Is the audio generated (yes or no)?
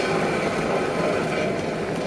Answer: no